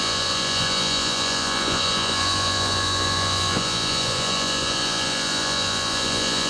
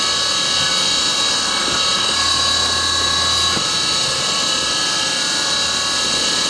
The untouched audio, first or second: second